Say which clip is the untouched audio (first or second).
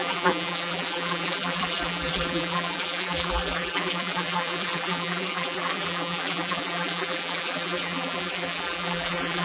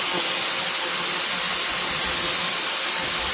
second